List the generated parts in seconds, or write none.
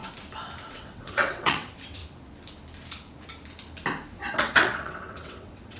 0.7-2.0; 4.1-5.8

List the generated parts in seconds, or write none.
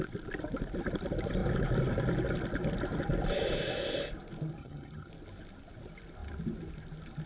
4.6-5.1